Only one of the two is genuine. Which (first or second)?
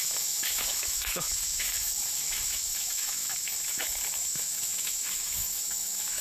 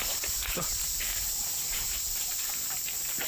second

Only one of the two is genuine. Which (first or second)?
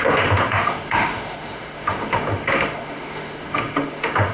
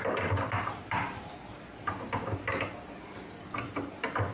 second